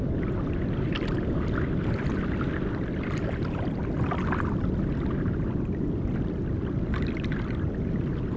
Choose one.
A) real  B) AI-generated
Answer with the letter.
A